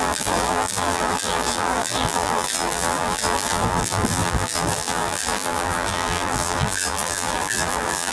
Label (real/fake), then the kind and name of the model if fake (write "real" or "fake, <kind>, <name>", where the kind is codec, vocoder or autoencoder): fake, vocoder, BigVGAN v2